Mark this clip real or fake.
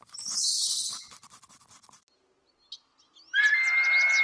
real